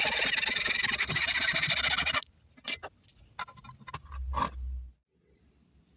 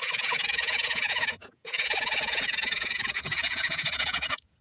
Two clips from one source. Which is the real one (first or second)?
first